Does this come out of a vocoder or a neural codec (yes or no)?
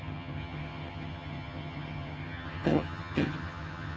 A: yes